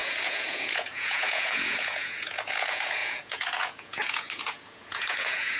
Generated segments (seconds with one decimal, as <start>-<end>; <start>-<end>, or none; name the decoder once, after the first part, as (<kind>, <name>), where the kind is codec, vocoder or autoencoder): 0.0-5.6 (vocoder, Vocos)